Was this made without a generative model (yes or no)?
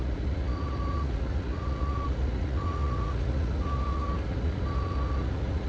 no